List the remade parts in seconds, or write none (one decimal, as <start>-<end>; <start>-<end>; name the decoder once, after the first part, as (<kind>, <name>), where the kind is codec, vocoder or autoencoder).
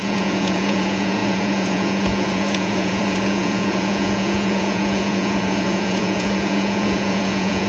0.0-7.7 (vocoder, Vocos)